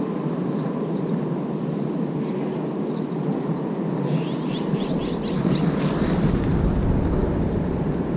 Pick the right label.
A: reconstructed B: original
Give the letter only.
B